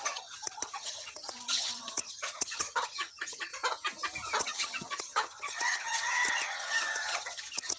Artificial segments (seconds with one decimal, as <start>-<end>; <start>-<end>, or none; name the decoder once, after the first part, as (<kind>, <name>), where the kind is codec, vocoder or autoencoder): 0.0-3.5 (vocoder, HiFi-GAN); 4.4-7.8